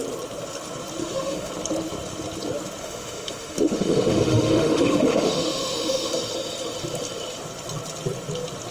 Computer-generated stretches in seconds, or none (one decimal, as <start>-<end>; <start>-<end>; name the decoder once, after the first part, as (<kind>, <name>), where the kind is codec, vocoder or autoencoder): 1.0-1.5 (autoencoder, DAC-VAE); 2.8-6.1